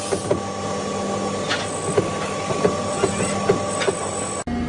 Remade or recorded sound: recorded